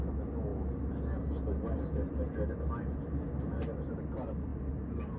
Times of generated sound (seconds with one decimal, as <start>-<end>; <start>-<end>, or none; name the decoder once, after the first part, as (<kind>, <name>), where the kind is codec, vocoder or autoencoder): none